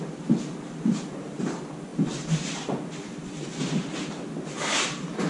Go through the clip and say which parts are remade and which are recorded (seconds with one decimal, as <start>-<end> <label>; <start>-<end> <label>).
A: 0.0-5.3 recorded